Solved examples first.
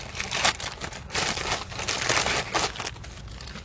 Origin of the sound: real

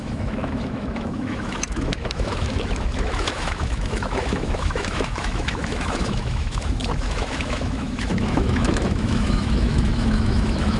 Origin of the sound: fake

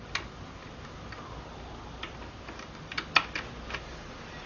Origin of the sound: real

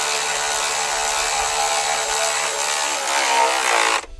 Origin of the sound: real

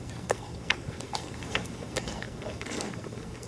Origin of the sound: fake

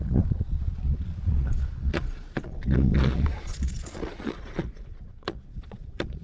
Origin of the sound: fake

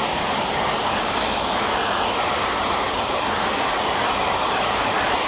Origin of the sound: real